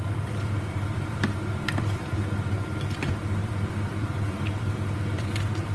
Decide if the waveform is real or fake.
fake